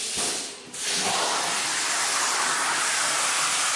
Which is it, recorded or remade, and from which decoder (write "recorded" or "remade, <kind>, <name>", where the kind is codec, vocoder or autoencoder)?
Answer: recorded